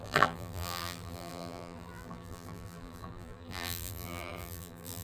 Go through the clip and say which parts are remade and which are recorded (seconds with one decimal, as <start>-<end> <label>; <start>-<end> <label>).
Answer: 0.0-5.0 remade